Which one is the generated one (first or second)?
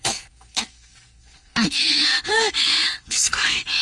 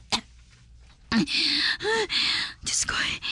first